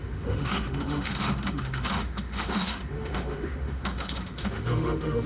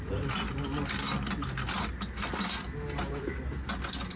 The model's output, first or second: first